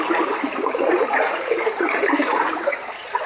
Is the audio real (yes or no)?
no